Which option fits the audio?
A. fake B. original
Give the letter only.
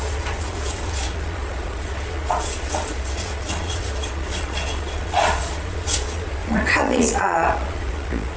A